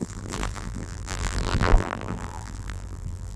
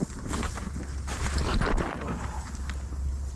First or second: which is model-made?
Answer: first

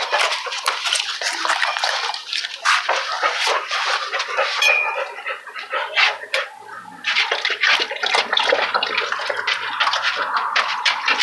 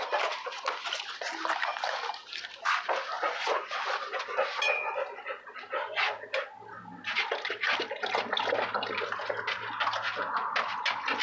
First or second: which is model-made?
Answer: first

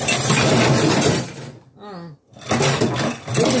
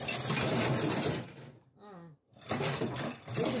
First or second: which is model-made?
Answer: second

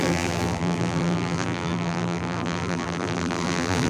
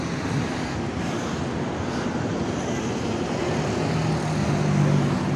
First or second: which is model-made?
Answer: first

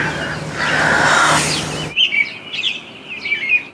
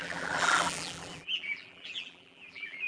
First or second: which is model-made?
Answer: second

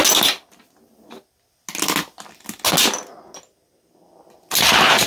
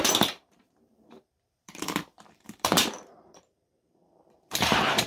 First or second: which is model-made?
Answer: second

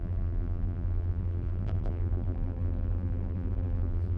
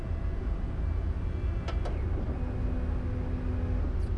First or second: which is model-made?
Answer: first